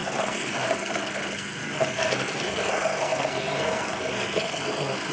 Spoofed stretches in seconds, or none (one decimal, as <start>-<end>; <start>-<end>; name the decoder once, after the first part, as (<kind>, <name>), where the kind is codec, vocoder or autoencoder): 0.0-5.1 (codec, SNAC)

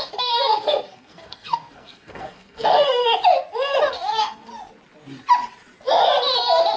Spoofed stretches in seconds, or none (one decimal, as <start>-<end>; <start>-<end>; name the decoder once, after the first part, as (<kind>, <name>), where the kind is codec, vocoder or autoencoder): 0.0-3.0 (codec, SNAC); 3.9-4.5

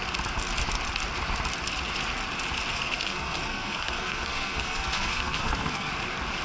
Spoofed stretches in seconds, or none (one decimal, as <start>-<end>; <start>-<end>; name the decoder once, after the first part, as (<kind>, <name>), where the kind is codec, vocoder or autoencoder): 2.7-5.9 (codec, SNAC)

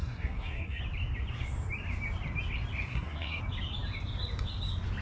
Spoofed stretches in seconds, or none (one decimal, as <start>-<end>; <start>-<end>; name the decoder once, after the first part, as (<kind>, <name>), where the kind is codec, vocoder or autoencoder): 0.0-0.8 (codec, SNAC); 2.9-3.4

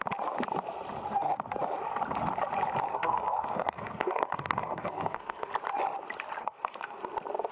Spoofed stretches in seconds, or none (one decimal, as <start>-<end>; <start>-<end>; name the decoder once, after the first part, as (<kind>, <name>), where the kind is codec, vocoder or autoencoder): 2.9-5.5 (codec, SNAC); 6.4-7.0

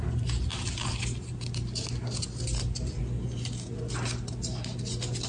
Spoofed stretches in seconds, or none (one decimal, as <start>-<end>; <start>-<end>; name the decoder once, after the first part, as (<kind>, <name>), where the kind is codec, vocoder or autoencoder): none

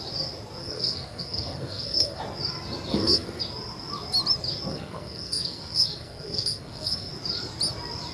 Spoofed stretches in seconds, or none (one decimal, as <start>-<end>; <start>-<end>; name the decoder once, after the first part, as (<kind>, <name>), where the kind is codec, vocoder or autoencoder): 0.6-2.2 (codec, SNAC); 2.9-3.4; 4.7-7.1